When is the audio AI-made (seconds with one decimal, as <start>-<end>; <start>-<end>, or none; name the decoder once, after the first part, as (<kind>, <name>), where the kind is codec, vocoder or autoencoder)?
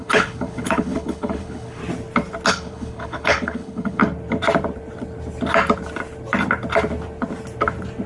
0.0-1.8 (codec, HILCodec); 2.5-4.0